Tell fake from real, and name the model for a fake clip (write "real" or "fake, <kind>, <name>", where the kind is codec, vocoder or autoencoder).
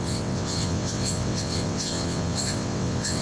fake, vocoder, WaveNeXt